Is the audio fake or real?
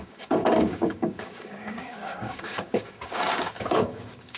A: fake